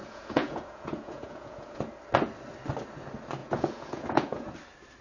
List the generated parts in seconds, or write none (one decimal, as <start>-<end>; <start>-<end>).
0.0-1.8; 3.4-4.5